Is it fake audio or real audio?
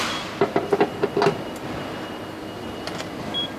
real